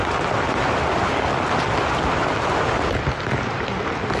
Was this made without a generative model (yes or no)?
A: yes